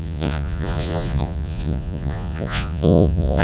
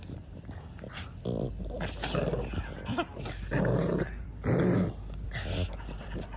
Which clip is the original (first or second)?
second